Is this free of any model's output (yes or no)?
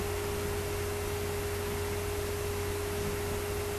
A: yes